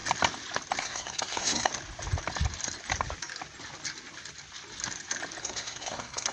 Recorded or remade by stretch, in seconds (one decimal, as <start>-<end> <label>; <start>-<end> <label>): 0.0-0.8 recorded; 0.8-1.7 remade; 1.7-5.4 recorded; 5.4-6.3 remade